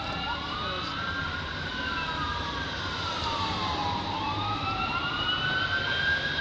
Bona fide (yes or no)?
no